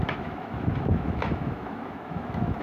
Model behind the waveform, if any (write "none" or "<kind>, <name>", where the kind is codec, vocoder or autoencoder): autoencoder, DAC-VAE